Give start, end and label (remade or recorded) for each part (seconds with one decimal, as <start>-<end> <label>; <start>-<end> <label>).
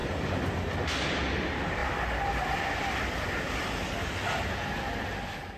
0.0-0.5 remade; 0.5-5.6 recorded